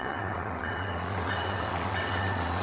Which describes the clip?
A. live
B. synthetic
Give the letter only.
B